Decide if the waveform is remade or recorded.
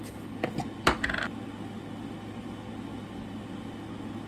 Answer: recorded